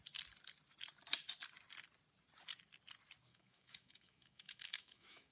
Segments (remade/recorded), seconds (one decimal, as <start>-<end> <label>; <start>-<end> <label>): 0.0-3.3 recorded; 3.3-5.3 remade